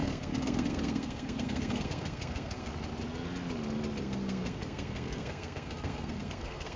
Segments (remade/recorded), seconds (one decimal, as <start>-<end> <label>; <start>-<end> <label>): 0.0-2.7 remade; 2.7-4.0 recorded; 4.0-6.8 remade

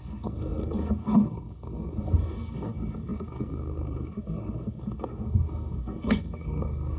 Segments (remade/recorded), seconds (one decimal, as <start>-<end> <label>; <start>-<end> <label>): 0.0-7.0 remade

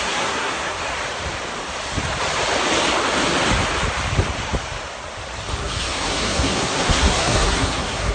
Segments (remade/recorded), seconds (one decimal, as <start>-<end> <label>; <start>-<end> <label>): 0.0-0.8 remade; 0.8-5.6 recorded; 5.6-8.1 remade

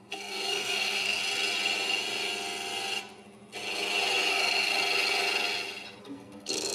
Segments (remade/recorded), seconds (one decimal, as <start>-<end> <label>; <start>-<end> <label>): 0.0-1.2 remade; 1.2-4.3 recorded; 4.3-4.7 remade; 4.7-6.0 recorded; 6.0-6.7 remade

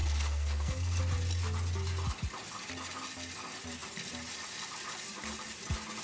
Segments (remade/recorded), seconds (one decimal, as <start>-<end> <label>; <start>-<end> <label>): 0.0-1.0 remade; 1.0-6.0 recorded

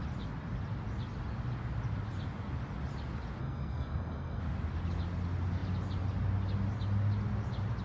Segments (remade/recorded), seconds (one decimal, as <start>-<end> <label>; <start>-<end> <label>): 0.0-3.4 recorded; 3.4-4.4 remade; 4.4-7.8 recorded

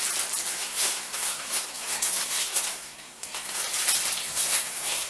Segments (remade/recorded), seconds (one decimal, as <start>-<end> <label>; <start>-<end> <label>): 0.0-0.5 recorded; 0.5-3.6 remade; 3.6-4.2 recorded; 4.2-5.1 remade